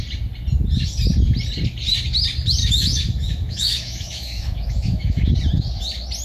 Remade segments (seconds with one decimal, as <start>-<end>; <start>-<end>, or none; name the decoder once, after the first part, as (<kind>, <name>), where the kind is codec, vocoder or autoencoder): 2.6-5.2 (autoencoder, DAC-VAE)